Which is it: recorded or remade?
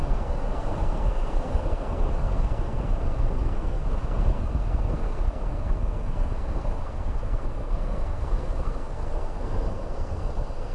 remade